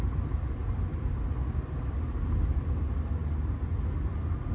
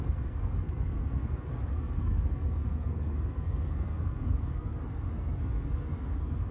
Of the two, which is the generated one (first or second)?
second